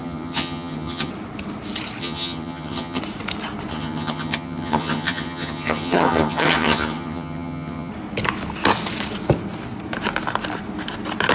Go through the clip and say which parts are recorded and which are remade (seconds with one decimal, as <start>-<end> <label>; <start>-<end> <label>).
0.0-1.1 remade; 1.1-2.0 recorded; 2.0-3.0 remade; 3.0-3.7 recorded; 3.7-7.9 remade; 7.9-11.3 recorded